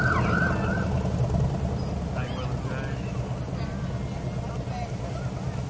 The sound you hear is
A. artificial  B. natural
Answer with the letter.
B